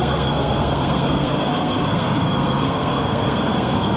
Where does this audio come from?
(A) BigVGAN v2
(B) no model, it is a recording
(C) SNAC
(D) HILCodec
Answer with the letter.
C